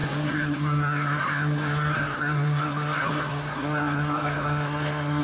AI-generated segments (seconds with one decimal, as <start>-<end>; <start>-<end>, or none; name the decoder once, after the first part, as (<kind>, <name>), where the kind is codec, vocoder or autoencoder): 0.0-5.2 (codec, SNAC)